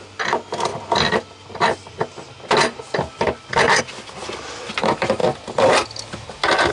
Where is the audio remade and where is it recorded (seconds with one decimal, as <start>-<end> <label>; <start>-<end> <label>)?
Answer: 0.0-6.7 recorded